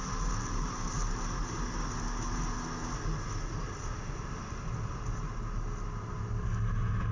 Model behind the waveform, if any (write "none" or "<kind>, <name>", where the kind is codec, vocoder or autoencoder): none